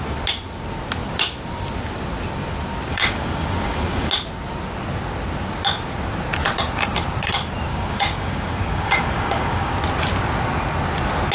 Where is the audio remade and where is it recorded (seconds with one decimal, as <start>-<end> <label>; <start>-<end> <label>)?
0.0-2.9 recorded; 2.9-4.1 remade; 4.1-7.7 recorded; 7.7-9.7 remade; 9.7-11.3 recorded